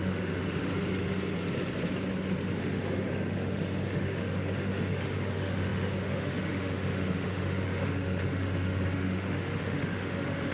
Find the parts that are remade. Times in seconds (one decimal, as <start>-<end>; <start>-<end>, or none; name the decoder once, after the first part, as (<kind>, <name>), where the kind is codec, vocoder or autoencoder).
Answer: 0.0-0.7 (autoencoder, DAC-VAE); 2.6-10.5